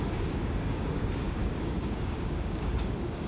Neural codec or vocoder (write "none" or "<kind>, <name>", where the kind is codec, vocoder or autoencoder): codec, DAC